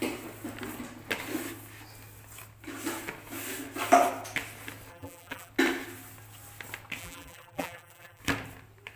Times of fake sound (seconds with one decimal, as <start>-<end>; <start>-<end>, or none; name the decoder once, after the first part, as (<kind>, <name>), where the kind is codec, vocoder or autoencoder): 4.9-5.5 (vocoder, BigVGAN v2); 7.0-8.2